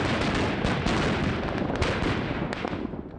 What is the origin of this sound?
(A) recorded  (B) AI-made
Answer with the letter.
A